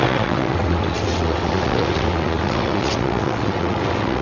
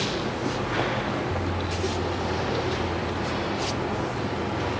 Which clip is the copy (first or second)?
first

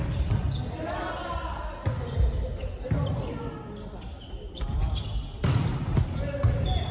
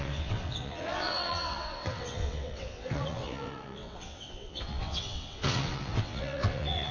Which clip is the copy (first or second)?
second